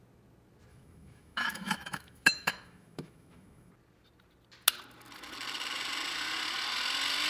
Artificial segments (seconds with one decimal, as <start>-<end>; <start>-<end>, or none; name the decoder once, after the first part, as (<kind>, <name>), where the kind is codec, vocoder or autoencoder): 0.7-3.7 (autoencoder, DAC-VAE)